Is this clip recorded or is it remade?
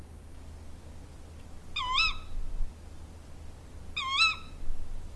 recorded